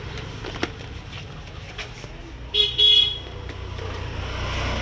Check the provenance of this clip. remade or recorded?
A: recorded